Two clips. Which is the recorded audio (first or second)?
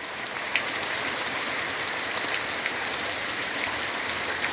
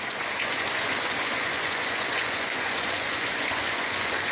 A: first